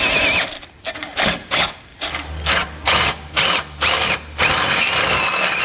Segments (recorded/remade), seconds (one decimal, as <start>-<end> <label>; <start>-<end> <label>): 0.0-5.6 recorded